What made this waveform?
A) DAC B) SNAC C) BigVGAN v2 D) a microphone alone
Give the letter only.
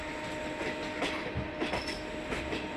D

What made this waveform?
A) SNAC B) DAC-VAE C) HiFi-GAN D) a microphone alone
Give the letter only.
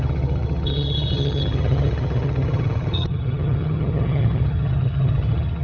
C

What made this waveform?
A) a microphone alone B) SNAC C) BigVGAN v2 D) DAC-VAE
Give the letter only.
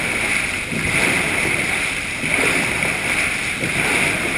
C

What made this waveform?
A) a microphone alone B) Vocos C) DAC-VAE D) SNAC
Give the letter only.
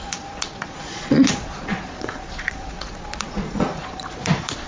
B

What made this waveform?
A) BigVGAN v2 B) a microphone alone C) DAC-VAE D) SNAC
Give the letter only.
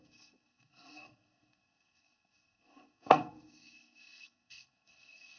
D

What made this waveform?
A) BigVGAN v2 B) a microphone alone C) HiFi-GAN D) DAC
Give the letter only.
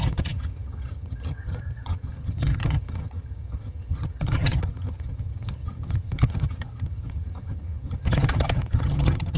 C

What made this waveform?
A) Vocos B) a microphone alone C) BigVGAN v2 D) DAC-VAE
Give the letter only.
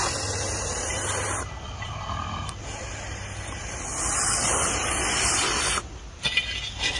B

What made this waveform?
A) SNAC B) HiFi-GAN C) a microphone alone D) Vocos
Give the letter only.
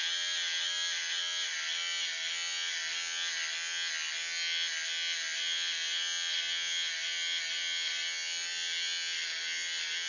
C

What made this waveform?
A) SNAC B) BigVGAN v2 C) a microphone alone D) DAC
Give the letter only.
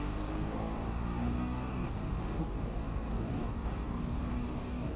D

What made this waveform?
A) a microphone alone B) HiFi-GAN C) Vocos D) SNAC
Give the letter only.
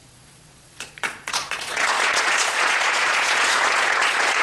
C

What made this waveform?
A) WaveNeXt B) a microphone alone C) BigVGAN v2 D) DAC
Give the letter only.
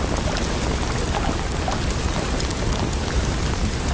B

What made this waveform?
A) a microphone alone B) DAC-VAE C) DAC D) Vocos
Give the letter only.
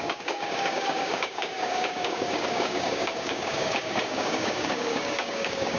C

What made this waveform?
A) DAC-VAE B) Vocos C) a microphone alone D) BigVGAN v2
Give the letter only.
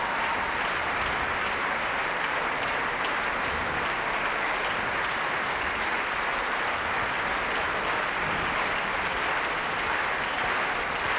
C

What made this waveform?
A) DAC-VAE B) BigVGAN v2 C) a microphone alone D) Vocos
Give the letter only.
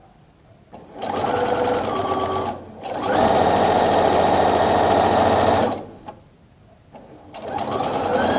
C